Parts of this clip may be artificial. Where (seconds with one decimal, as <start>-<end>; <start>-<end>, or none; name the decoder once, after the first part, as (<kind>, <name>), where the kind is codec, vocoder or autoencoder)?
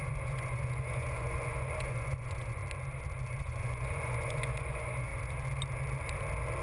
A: 0.0-2.6 (vocoder, Vocos); 3.4-5.1